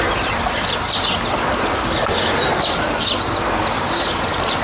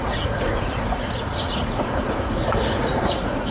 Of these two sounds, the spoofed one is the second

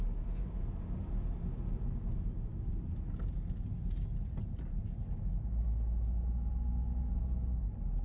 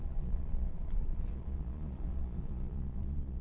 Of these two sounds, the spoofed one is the second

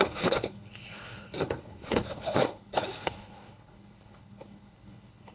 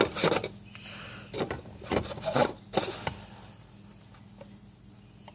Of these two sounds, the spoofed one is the first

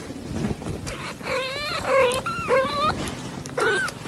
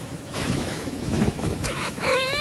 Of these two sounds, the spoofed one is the second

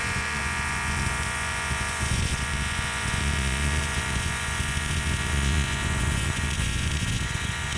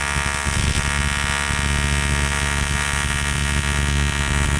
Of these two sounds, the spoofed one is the first